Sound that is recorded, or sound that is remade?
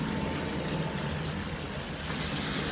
recorded